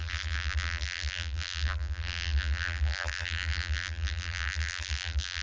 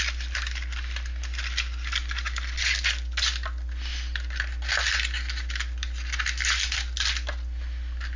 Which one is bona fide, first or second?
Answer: second